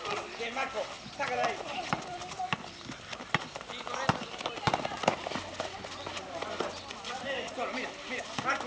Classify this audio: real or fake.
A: real